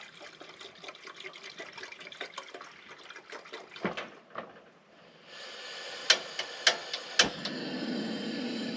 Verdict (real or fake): real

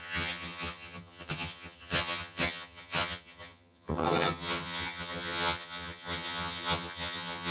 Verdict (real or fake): fake